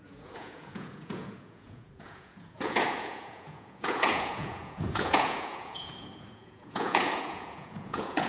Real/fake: fake